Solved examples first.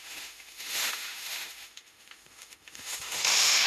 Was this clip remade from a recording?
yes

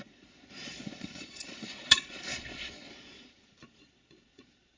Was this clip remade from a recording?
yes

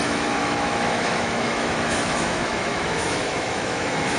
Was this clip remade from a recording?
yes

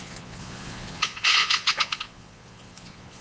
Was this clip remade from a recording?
yes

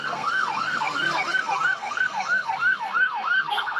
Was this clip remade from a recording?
yes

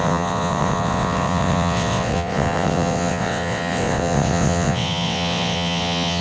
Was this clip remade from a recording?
yes